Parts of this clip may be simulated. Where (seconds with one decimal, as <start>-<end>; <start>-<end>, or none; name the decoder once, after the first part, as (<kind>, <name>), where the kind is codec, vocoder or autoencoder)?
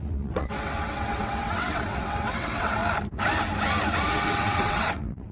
0.0-2.8 (vocoder, WaveNeXt); 4.1-5.3